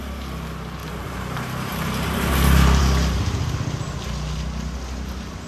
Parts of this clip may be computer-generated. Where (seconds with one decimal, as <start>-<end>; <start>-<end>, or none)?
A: 0.8-2.8